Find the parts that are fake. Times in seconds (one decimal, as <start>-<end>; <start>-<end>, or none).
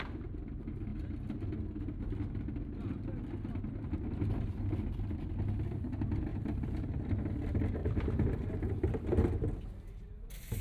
6.3-7.2; 7.8-9.5